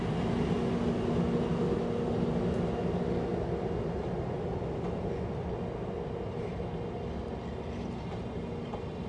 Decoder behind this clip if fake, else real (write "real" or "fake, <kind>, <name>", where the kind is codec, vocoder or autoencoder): real